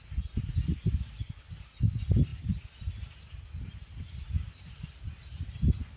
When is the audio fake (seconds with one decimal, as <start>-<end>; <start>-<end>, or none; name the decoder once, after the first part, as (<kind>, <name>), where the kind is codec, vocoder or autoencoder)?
none